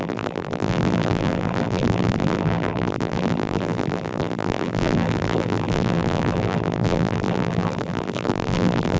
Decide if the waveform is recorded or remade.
remade